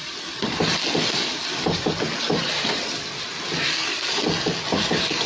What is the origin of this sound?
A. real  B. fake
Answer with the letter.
A